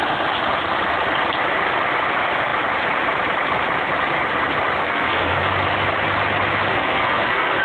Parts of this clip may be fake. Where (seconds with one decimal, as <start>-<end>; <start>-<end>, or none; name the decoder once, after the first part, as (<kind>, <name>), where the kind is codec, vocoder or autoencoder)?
4.8-5.5 (codec, SNAC); 6.7-7.6